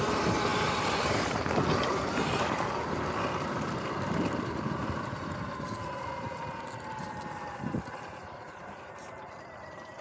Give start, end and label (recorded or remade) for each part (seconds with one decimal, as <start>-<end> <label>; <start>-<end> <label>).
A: 0.0-8.2 recorded; 8.2-9.4 remade; 9.4-10.0 recorded